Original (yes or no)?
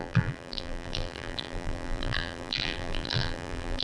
no